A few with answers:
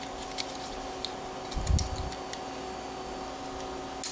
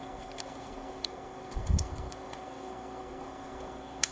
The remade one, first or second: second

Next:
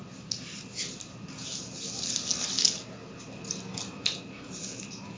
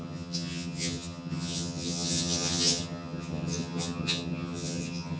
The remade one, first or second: second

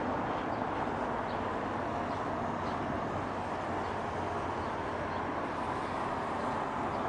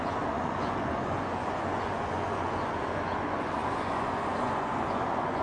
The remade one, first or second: second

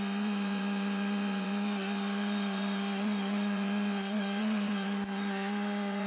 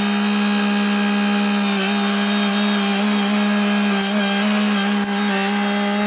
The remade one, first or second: first